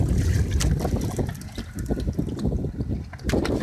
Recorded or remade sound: recorded